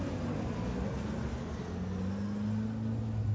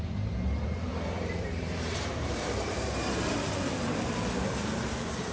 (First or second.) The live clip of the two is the first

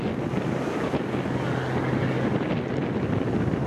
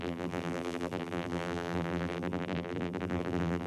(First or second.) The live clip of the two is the first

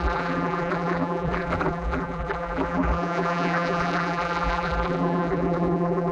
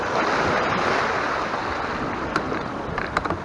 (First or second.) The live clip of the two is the second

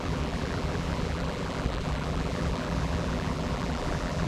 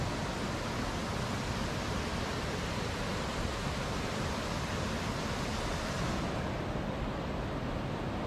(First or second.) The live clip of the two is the second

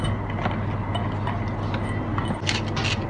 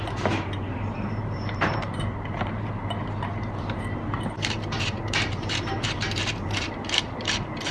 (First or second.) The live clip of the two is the first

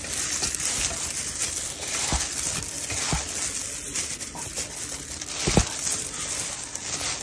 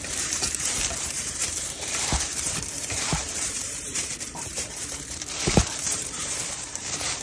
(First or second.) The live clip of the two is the first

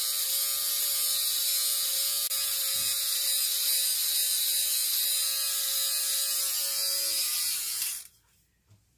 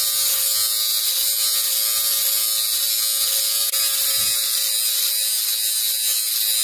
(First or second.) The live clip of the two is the second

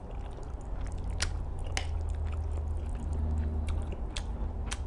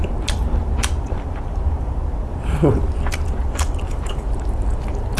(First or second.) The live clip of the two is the first